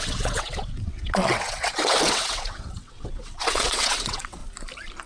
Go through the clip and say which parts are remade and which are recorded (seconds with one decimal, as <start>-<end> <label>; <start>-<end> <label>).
0.0-4.4 remade; 4.4-5.1 recorded